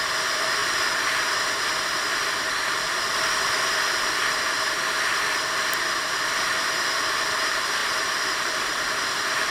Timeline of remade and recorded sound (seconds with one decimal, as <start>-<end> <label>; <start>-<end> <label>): 0.0-9.5 recorded